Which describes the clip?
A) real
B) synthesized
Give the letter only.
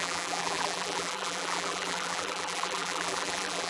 B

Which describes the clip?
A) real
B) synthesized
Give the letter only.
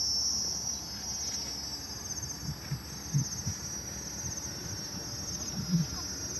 A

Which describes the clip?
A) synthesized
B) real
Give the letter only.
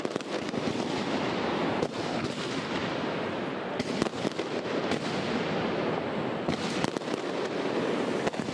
B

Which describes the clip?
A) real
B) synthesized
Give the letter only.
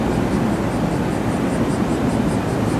B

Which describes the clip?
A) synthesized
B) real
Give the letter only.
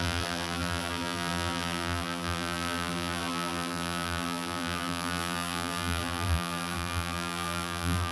A